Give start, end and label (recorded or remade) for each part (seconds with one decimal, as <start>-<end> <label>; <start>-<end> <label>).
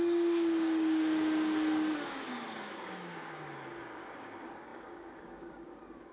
0.0-6.1 remade